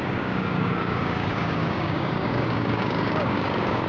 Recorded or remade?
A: remade